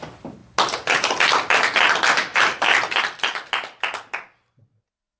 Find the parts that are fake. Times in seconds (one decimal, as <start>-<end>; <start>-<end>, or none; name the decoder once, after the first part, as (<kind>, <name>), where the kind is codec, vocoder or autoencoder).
2.3-3.0 (vocoder, BigVGAN v2)